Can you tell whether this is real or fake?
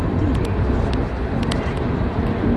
real